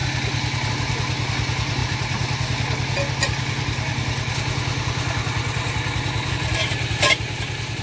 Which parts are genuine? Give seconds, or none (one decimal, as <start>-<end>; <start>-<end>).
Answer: 0.0-7.8